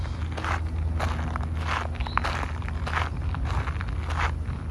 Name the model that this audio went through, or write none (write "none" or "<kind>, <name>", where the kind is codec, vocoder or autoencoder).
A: none